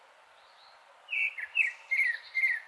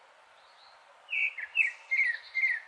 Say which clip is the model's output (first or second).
first